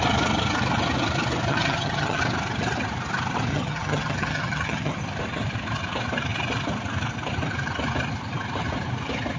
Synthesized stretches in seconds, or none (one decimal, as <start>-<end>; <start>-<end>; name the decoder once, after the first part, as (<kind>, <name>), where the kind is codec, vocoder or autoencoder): 1.5-2.2 (vocoder, HiFi-GAN); 3.5-5.0